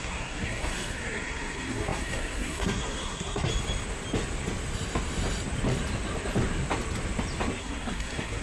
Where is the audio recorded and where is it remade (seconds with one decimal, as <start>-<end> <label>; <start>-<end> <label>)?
0.0-3.5 remade; 3.5-7.6 recorded; 7.6-8.4 remade

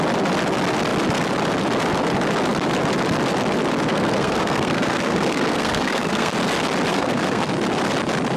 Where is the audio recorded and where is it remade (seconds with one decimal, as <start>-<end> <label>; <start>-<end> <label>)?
0.0-3.9 recorded; 3.9-6.3 remade; 6.3-6.9 recorded; 6.9-7.5 remade; 7.5-8.4 recorded

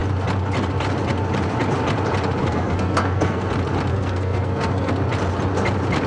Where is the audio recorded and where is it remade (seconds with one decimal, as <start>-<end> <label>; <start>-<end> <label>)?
0.0-2.4 recorded; 2.4-3.5 remade; 3.5-3.9 recorded; 3.9-4.9 remade; 4.9-6.1 recorded

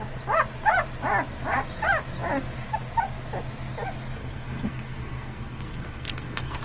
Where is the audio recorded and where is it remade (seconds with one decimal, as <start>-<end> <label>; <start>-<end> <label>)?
0.0-4.2 recorded; 4.2-6.6 remade

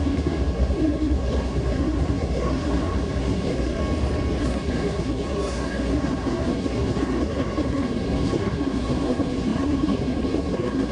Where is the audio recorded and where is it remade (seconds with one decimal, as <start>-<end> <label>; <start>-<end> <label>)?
0.0-3.8 remade; 3.8-4.4 recorded; 4.4-10.9 remade